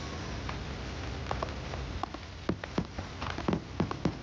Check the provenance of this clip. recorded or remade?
recorded